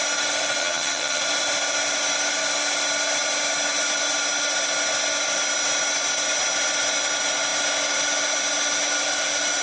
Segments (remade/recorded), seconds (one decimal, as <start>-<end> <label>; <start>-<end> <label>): 0.0-0.6 recorded; 0.6-1.2 remade; 1.2-9.6 recorded

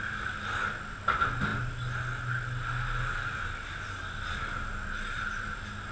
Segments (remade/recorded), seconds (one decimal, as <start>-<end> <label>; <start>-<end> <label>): 0.0-5.9 recorded

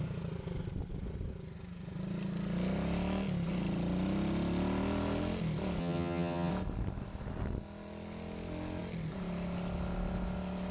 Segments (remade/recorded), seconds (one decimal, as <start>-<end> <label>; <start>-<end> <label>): 0.0-5.8 recorded; 5.8-6.5 remade; 6.5-10.7 recorded

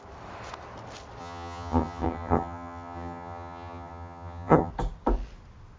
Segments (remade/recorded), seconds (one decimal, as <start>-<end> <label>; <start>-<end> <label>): 0.0-1.2 recorded; 1.2-4.7 remade; 4.7-5.8 recorded

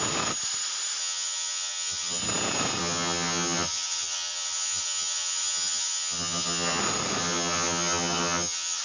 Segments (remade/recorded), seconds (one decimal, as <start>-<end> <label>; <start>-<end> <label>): 0.0-1.0 recorded; 1.0-2.2 remade; 2.2-2.8 recorded; 2.8-6.8 remade; 6.8-7.2 recorded; 7.2-8.8 remade

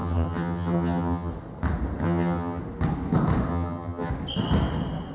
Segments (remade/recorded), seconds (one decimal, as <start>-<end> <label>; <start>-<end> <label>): 0.0-1.3 remade; 1.3-2.0 recorded; 2.0-2.6 remade; 2.6-3.5 recorded; 3.5-4.1 remade; 4.1-5.1 recorded

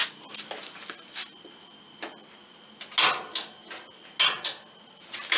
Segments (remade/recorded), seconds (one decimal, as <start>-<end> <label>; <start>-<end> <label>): 0.0-5.4 recorded

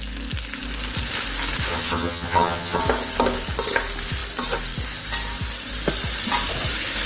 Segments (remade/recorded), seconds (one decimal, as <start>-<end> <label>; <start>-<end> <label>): 0.0-1.7 recorded; 1.7-2.8 remade; 2.8-7.1 recorded